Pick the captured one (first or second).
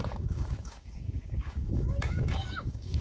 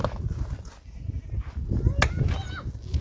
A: second